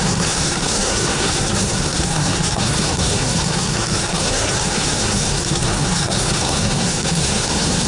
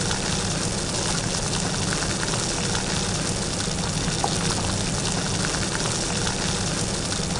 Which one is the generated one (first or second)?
first